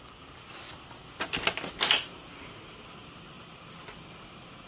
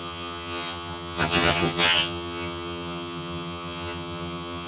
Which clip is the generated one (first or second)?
second